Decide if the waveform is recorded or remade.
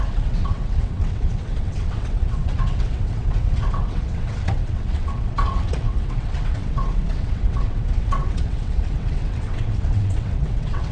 remade